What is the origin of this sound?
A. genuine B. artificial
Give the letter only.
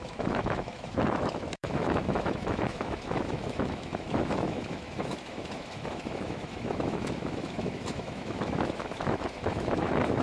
B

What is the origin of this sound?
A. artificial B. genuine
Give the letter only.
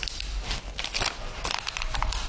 B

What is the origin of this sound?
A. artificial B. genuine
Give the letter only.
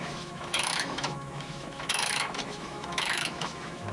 A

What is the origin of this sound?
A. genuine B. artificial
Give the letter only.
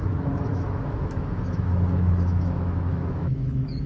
B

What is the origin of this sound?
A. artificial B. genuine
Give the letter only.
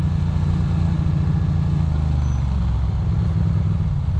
B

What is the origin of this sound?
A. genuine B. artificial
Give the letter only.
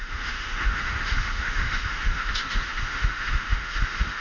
B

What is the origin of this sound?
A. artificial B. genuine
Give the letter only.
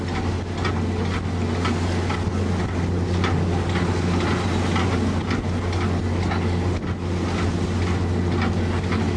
B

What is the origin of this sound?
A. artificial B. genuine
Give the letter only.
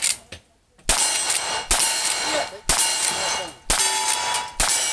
B